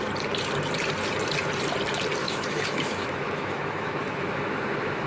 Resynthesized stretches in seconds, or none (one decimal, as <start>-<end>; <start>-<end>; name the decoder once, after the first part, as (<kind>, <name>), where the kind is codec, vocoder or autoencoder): 2.2-5.1 (autoencoder, DAC-VAE)